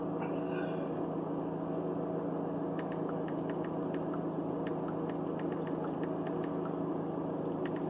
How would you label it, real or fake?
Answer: real